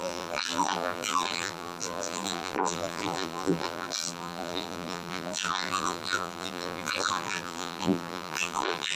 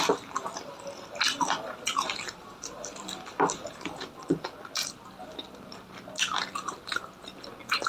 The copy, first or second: first